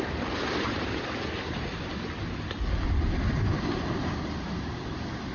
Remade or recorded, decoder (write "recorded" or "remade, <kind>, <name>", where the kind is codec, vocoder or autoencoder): remade, vocoder, BigVGAN v2